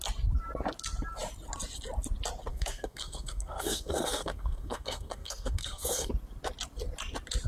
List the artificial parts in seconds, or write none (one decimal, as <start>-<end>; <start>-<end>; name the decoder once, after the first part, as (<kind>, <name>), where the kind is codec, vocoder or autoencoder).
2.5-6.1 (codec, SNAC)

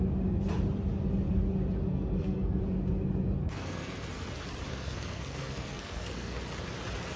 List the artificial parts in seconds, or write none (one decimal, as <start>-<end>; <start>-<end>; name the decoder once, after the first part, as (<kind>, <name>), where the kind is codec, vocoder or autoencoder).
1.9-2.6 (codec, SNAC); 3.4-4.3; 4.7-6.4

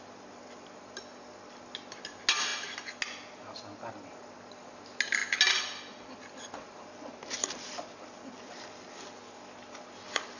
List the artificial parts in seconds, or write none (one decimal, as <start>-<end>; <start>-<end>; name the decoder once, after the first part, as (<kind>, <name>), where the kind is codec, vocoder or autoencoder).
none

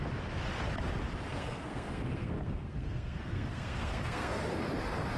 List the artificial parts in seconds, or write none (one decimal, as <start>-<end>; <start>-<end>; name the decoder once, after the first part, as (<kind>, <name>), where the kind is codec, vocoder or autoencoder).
1.3-4.4 (codec, SNAC)